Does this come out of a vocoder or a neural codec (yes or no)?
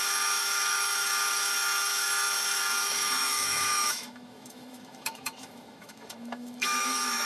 yes